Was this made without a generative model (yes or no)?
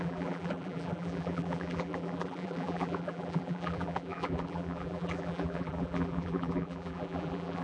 no